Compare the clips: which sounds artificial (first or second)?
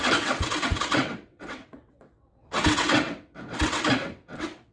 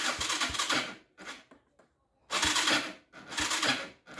first